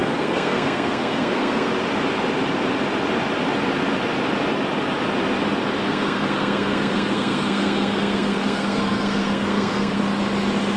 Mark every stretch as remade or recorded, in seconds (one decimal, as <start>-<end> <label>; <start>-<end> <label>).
0.0-1.7 remade; 1.7-5.8 recorded; 5.8-10.0 remade; 10.0-10.8 recorded